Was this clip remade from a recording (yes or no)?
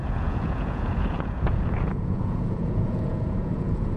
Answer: yes